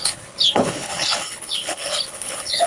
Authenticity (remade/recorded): remade